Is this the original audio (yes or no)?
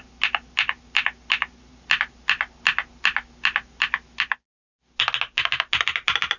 yes